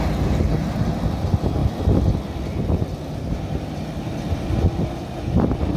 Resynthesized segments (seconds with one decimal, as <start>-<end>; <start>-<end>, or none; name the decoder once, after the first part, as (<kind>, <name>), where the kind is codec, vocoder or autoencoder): none